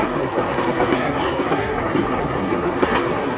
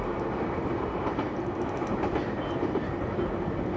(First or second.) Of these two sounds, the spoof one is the first